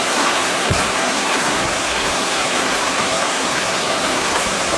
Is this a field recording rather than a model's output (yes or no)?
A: no